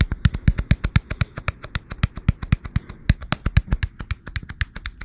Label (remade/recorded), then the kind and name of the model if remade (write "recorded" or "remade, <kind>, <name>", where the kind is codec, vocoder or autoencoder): recorded